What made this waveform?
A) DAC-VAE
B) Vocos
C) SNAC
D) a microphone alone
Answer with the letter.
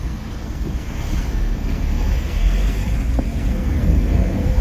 C